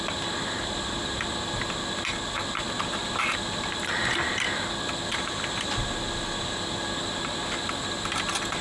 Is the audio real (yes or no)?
yes